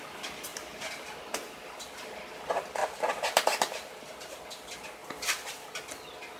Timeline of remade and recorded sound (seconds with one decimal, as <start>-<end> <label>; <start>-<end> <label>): 0.0-0.5 recorded; 0.5-1.2 remade; 1.2-2.8 recorded; 2.8-4.4 remade; 4.4-5.0 recorded; 5.0-5.8 remade; 5.8-6.4 recorded